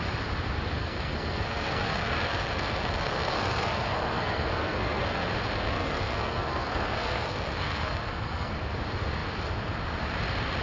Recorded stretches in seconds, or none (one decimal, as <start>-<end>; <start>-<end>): 0.0-0.8; 5.3-5.7; 8.5-10.6